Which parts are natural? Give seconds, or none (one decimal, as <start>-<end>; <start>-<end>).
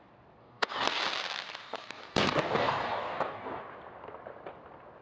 0.0-0.4; 1.0-1.6; 3.6-5.0